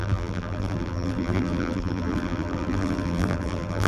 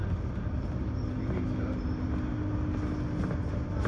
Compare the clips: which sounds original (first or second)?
second